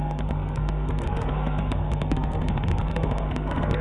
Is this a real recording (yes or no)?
no